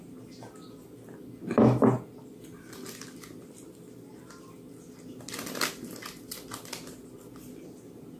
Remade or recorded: recorded